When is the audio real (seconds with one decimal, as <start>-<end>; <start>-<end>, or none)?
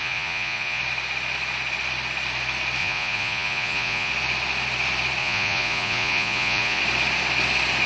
0.8-2.8; 4.1-5.2; 6.8-7.9